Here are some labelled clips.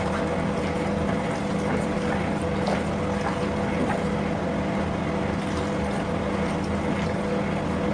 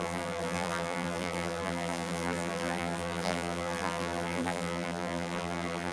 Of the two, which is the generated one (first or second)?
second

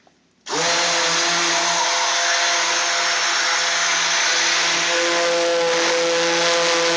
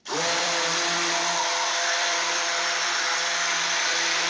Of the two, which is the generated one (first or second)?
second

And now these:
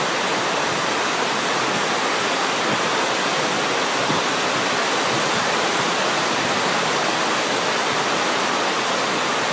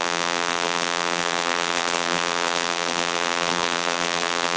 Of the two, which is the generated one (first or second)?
second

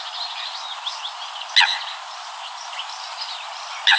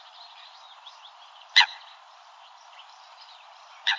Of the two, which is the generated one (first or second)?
second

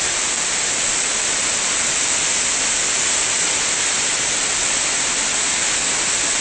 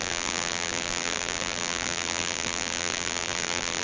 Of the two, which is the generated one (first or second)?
second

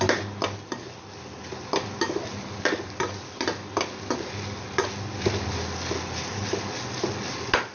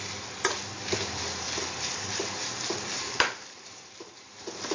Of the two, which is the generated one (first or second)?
second